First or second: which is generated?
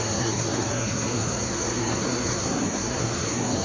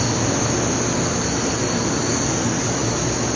first